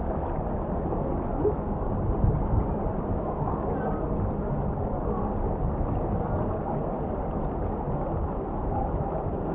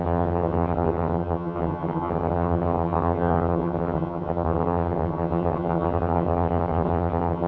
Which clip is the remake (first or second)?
second